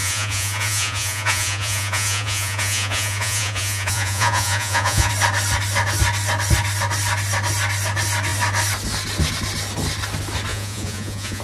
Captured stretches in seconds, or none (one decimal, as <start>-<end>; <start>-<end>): 5.1-10.5